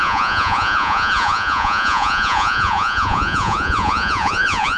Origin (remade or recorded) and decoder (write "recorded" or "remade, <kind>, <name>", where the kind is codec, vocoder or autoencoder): remade, vocoder, Vocos